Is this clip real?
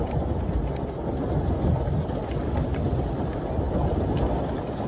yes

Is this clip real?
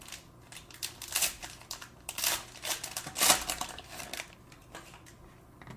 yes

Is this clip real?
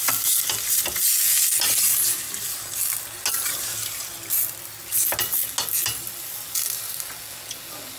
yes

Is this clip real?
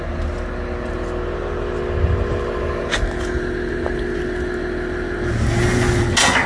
yes